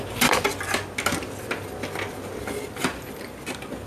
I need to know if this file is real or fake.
real